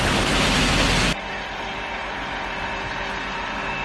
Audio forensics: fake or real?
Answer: real